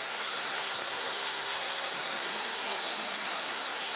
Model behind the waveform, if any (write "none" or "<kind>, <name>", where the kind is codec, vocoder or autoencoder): codec, SNAC